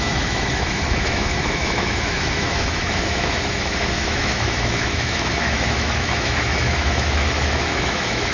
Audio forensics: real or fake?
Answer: fake